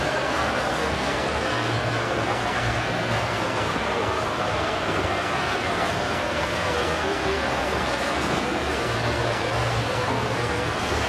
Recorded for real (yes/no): no